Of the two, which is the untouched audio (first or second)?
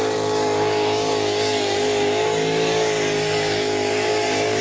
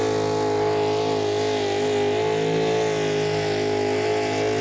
second